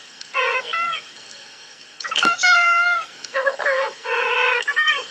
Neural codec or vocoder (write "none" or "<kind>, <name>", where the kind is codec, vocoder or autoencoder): codec, SNAC